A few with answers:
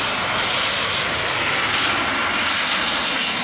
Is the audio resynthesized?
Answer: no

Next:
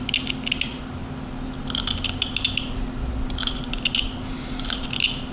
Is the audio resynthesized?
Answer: no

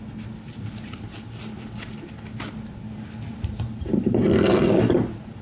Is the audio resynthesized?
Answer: no